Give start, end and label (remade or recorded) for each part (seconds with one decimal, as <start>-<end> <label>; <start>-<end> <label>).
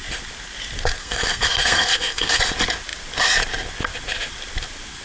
0.0-1.0 recorded; 1.0-2.4 remade; 2.4-5.0 recorded